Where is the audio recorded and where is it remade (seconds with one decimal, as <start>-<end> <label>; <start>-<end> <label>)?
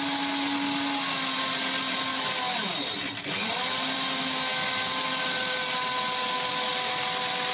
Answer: 0.0-7.5 recorded